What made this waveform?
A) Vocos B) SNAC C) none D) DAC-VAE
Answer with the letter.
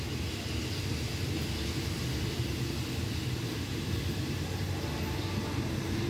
C